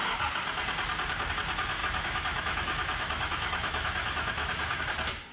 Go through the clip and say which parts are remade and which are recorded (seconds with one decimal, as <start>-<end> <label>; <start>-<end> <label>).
0.0-1.8 recorded; 1.8-4.8 remade; 4.8-5.3 recorded